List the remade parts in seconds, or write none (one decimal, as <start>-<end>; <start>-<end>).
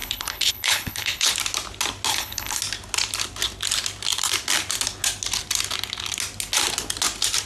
0.0-1.3; 2.1-2.6